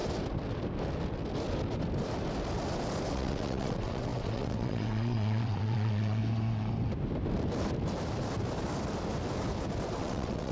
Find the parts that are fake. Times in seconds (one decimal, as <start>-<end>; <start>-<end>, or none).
3.1-6.2; 10.0-10.5